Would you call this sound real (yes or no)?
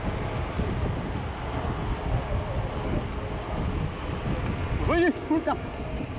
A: yes